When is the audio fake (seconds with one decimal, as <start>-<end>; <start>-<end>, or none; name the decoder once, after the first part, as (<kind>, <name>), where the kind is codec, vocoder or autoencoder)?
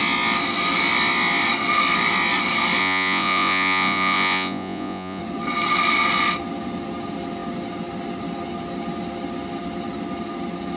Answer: 2.8-5.2 (vocoder, Vocos)